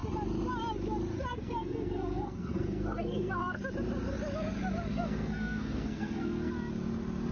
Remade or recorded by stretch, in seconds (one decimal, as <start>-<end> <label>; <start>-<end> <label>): 0.0-1.3 recorded; 1.3-3.6 remade; 3.6-4.9 recorded; 4.9-6.5 remade; 6.5-7.3 recorded